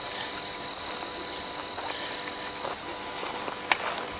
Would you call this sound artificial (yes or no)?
no